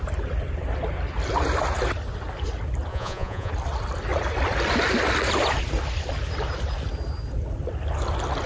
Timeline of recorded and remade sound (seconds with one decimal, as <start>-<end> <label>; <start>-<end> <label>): 0.0-2.9 recorded; 2.9-3.5 remade; 3.5-8.5 recorded